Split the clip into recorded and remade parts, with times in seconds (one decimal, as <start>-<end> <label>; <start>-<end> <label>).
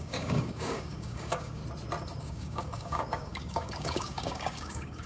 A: 0.0-1.6 remade; 1.6-2.2 recorded; 2.2-5.1 remade